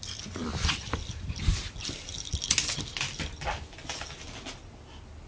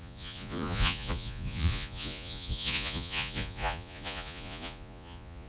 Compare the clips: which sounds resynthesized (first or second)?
second